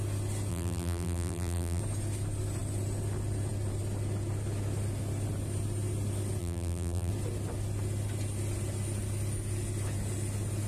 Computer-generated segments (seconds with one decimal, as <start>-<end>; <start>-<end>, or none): 0.5-1.8; 6.4-7.1